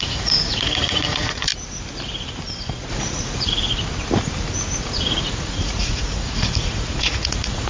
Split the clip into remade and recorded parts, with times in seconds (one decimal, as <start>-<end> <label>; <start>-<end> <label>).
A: 0.0-1.5 remade; 1.5-2.9 recorded; 2.9-3.7 remade; 3.7-4.8 recorded; 4.8-7.7 remade